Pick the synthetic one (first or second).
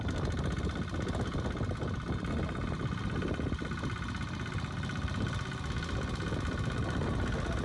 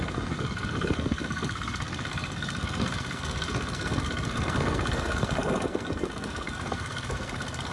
second